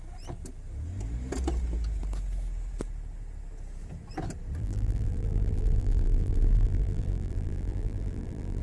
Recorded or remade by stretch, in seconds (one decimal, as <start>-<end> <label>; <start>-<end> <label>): 0.0-4.6 recorded; 4.6-8.6 remade